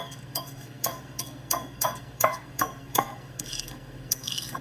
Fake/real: fake